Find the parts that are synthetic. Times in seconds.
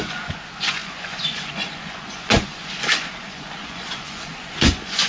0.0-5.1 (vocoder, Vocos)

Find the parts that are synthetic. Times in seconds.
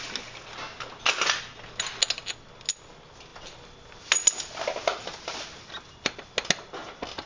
none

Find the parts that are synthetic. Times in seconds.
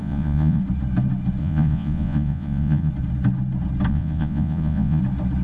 0.0-0.6 (vocoder, Vocos); 1.4-2.9; 3.9-5.0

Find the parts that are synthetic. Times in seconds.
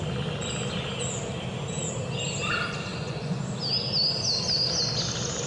2.9-3.4 (vocoder, Vocos)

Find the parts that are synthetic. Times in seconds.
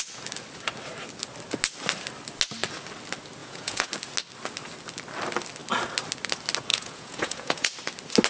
3.4-3.9 (vocoder, Vocos); 6.7-7.7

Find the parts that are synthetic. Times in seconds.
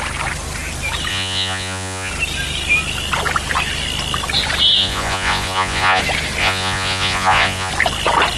1.1-2.1 (vocoder, Vocos); 4.8-6.0; 6.4-7.7